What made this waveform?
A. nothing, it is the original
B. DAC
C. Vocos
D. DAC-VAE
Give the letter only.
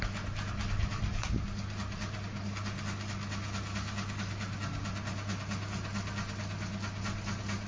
A